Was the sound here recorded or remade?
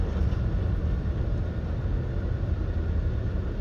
recorded